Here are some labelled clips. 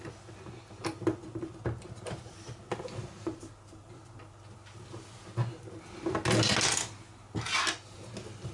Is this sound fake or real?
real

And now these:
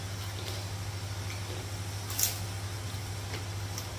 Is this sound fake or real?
real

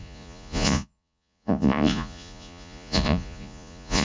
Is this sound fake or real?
fake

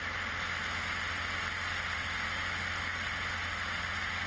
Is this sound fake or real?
real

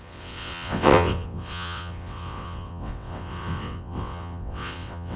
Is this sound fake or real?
fake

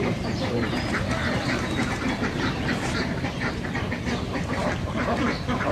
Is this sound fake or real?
fake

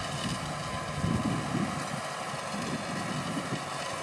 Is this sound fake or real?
real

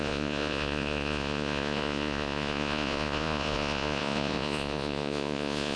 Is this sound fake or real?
fake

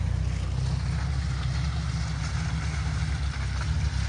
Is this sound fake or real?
real